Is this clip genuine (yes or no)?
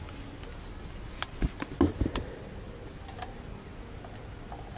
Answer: yes